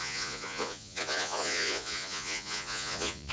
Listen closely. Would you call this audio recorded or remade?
remade